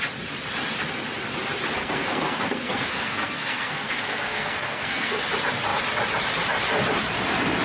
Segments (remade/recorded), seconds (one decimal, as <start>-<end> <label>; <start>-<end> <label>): 0.0-1.8 recorded; 1.8-5.2 remade; 5.2-7.6 recorded

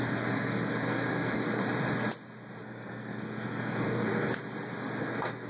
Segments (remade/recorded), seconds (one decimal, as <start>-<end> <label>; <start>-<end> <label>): 0.0-1.6 remade; 1.6-2.6 recorded; 2.6-4.3 remade; 4.3-5.0 recorded; 5.0-5.5 remade

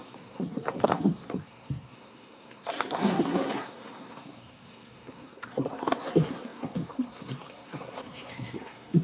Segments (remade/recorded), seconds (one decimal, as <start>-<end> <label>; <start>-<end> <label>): 0.0-9.0 remade

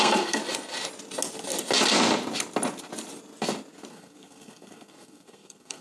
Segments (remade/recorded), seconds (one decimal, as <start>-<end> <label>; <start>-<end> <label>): 0.0-0.4 remade; 0.4-3.9 recorded; 3.9-5.8 remade